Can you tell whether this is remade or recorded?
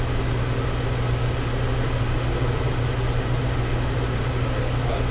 recorded